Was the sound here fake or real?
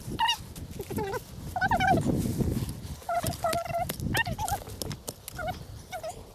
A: real